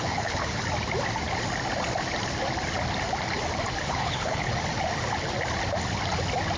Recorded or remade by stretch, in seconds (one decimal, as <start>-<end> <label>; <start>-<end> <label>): 0.0-0.6 remade; 0.6-3.8 recorded; 3.8-4.5 remade; 4.5-6.6 recorded